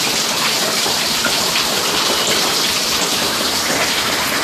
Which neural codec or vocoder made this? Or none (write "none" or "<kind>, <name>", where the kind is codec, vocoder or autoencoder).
none